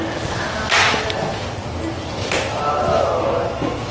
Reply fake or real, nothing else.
real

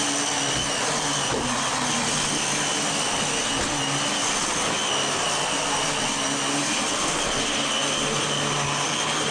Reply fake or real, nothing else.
real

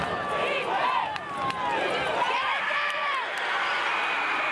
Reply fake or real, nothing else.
real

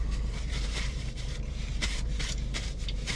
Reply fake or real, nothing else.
fake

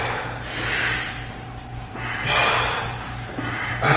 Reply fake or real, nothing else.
real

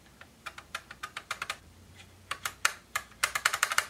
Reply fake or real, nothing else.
fake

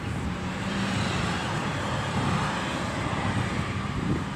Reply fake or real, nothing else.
fake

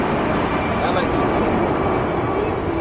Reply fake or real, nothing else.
real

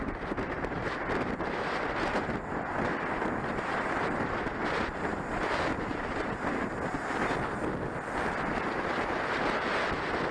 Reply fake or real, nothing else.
real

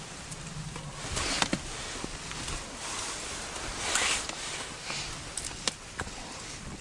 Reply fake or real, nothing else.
fake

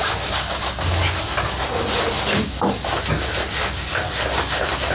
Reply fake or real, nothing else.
real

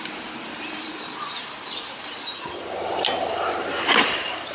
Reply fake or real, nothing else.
fake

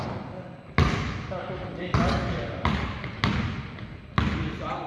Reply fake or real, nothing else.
real